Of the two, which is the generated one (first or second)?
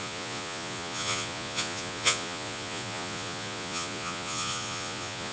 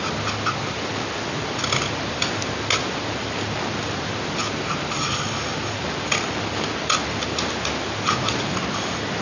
first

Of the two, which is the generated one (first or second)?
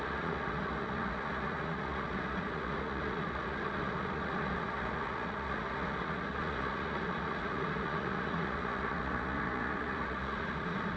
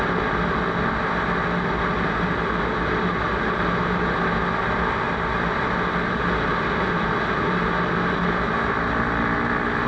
first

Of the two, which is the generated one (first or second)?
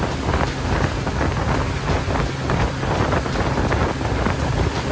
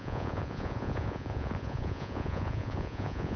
second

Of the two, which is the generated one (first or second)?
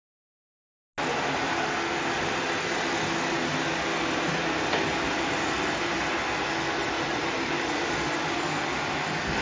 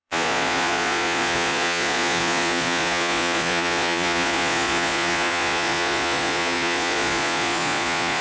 second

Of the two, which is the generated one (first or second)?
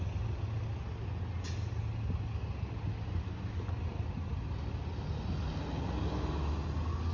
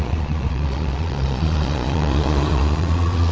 second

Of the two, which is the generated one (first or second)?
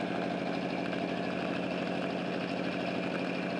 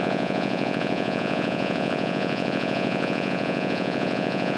second